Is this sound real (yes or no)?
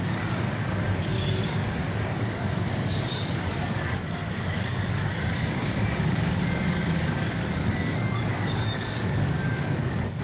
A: no